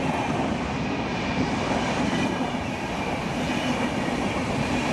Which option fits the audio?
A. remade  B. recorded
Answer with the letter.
B